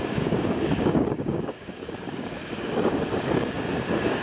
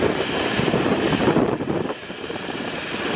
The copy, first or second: first